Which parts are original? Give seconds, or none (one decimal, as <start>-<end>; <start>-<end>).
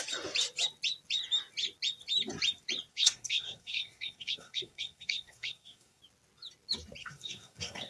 0.0-2.9; 6.0-7.0